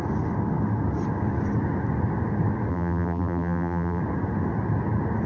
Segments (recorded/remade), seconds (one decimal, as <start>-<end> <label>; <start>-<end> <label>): 0.0-2.7 recorded; 2.7-4.0 remade; 4.0-5.3 recorded